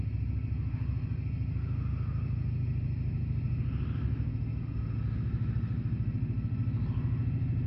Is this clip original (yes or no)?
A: yes